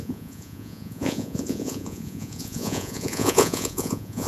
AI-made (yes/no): yes